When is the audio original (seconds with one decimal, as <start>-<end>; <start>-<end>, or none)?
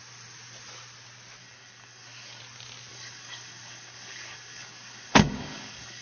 0.0-1.4; 2.4-2.9